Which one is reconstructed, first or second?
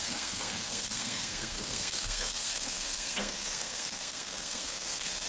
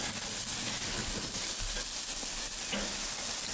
first